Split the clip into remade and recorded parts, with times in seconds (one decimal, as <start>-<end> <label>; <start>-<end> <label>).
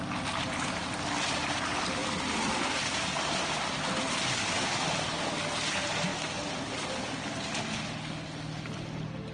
0.0-9.3 recorded